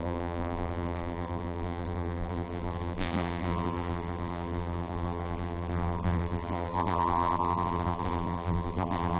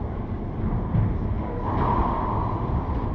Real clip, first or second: second